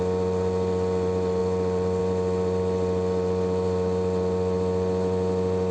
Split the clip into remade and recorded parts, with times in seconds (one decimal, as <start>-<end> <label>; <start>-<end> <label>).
0.0-5.7 recorded